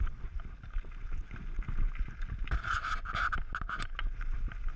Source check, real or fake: real